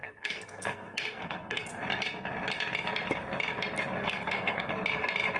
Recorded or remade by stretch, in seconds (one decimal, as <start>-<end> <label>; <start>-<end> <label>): 0.0-1.7 remade; 1.7-4.0 recorded; 4.0-4.7 remade; 4.7-5.4 recorded